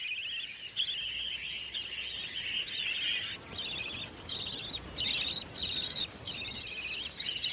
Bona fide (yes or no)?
yes